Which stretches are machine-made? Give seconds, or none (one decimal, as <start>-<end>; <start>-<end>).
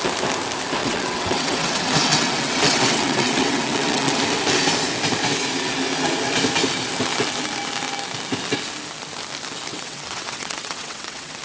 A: 0.8-4.2; 9.7-11.4